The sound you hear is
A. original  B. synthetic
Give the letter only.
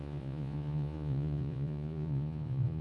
B